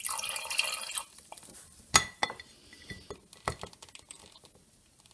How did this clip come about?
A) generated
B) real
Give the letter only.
B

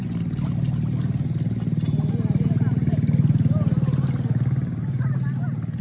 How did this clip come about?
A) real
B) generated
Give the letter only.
A